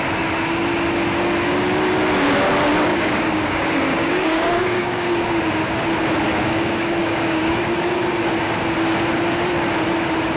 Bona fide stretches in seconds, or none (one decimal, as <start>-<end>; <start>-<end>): 0.0-2.9; 5.4-6.3; 7.6-10.4